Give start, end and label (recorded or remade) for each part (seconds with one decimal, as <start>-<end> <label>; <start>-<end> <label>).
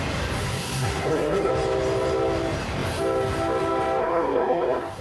0.0-0.4 recorded; 0.4-1.5 remade; 1.5-4.0 recorded; 4.0-5.0 remade